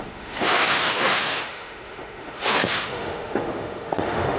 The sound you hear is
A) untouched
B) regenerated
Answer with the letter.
B